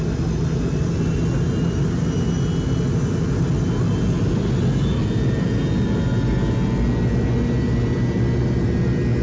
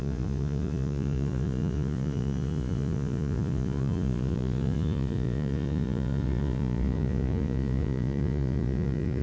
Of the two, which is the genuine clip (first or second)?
first